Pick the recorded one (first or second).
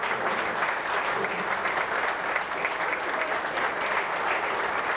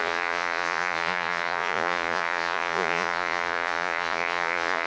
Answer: first